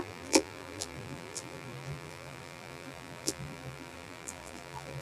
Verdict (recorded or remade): remade